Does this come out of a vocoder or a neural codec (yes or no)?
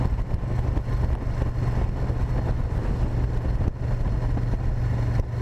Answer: no